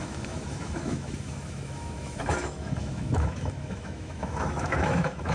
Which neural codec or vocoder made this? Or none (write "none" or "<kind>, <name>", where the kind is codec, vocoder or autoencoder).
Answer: autoencoder, DAC-VAE